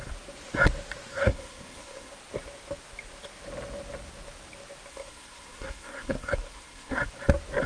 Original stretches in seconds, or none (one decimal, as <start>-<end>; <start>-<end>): 0.0-1.1; 2.1-4.9; 7.0-7.7